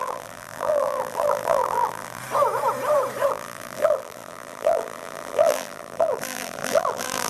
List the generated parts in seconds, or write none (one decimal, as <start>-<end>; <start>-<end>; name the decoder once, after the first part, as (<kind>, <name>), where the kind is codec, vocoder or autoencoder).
0.0-2.2 (vocoder, BigVGAN v2); 3.3-7.3